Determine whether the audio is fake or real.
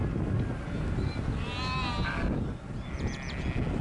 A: real